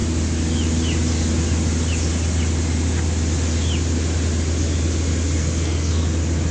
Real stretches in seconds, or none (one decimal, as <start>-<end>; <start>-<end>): 0.0-5.4; 6.0-6.5